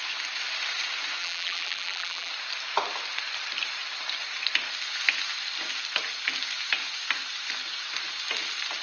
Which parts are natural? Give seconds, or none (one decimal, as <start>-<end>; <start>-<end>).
0.0-1.2; 2.3-8.8

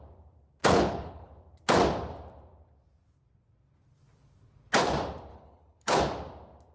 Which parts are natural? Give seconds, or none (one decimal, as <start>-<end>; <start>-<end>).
0.0-0.6; 1.3-5.3; 6.0-6.7

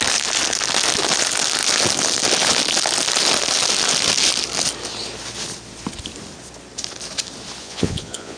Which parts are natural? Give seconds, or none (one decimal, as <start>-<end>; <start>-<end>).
0.0-7.6